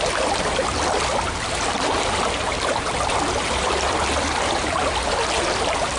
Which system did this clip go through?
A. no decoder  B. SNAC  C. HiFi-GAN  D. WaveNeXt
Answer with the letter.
A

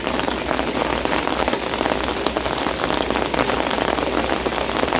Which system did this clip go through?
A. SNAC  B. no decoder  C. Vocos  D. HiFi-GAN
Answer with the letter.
B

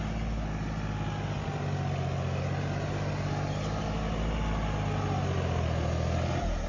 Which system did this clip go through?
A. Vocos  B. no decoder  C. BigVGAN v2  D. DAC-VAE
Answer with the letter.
B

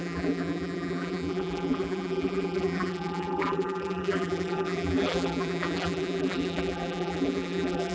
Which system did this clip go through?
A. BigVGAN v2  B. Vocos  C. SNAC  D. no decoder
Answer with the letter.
A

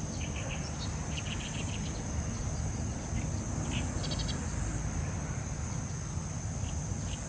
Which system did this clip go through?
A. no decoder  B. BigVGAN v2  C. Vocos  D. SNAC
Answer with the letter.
A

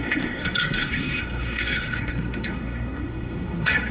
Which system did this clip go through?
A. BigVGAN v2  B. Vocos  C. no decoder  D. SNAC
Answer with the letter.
D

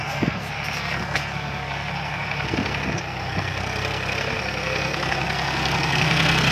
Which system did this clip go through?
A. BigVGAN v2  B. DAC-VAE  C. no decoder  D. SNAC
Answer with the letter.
D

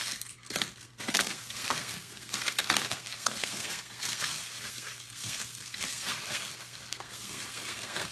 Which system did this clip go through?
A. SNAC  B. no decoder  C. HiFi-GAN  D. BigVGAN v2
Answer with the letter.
A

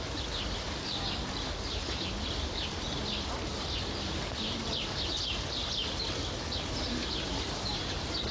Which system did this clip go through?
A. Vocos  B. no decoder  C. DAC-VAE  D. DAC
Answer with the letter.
B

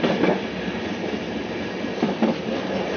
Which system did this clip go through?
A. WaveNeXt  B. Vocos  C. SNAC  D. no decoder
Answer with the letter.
D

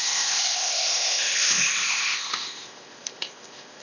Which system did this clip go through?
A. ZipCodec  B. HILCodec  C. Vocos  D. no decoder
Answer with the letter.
A